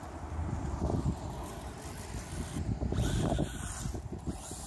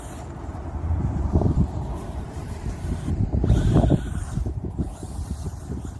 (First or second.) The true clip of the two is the first